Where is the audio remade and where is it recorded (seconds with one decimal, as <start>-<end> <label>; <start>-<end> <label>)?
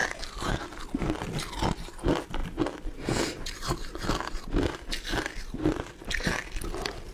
0.0-7.1 recorded